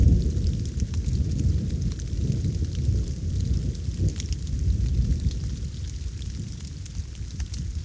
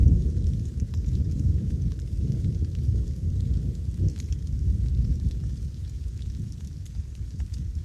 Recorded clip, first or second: first